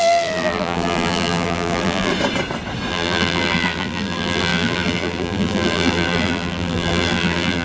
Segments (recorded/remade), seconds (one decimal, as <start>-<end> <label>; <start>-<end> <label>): 0.0-2.1 remade; 2.1-2.9 recorded; 2.9-7.6 remade